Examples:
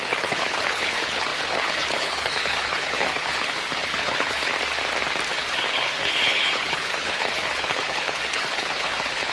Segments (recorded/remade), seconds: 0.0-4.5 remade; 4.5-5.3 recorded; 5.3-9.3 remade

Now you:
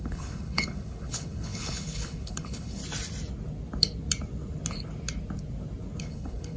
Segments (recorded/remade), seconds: 0.0-2.8 remade; 2.8-6.0 recorded; 6.0-6.6 remade

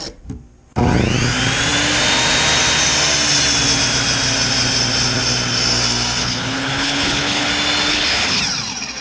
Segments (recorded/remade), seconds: 0.0-6.2 recorded; 6.2-7.5 remade; 7.5-7.9 recorded; 7.9-8.4 remade; 8.4-9.0 recorded